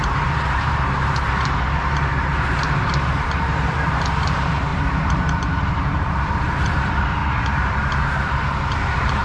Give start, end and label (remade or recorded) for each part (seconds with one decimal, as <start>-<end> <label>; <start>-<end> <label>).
0.0-9.2 remade